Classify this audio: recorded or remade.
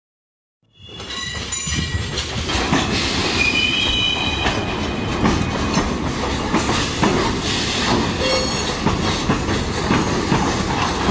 recorded